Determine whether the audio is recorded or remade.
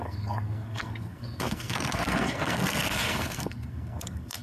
remade